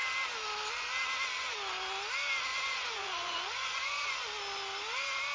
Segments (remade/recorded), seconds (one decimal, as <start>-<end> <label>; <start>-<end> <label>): 0.0-2.5 recorded; 2.5-4.2 remade; 4.2-5.3 recorded